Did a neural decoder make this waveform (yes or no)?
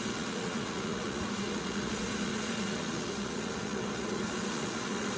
yes